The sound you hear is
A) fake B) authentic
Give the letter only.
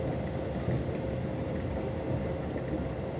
B